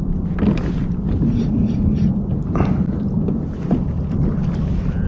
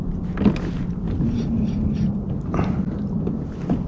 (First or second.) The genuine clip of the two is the second